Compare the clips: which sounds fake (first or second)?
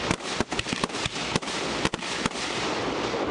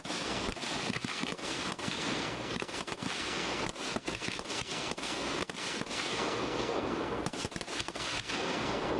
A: second